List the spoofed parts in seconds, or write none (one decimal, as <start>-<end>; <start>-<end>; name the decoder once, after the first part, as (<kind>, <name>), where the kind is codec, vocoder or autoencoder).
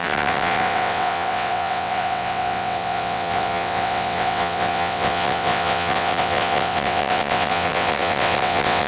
0.0-8.9 (vocoder, WaveNeXt)